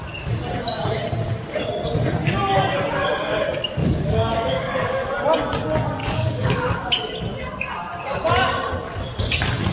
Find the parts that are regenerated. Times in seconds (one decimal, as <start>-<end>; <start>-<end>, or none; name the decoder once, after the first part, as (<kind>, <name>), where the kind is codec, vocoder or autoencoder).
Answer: 3.8-5.1 (codec, DAC); 6.0-6.8